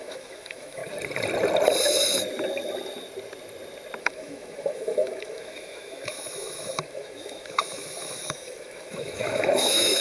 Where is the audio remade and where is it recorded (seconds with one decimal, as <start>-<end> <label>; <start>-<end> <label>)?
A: 0.0-0.8 remade; 0.8-4.0 recorded; 4.0-10.0 remade